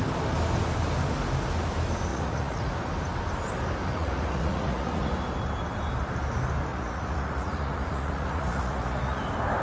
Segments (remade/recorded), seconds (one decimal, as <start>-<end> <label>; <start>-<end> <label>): 0.0-2.1 recorded; 2.1-2.7 remade; 2.7-3.9 recorded; 3.9-5.1 remade; 5.1-6.7 recorded; 6.7-9.2 remade; 9.2-9.6 recorded

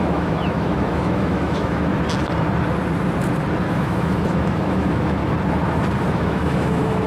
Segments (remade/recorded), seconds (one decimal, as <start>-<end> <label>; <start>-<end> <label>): 0.0-1.9 remade; 1.9-3.7 recorded; 3.7-5.2 remade; 5.2-6.1 recorded; 6.1-7.1 remade